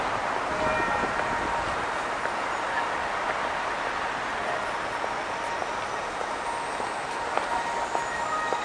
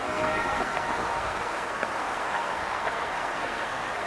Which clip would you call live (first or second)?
first